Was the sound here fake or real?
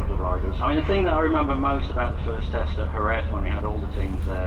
real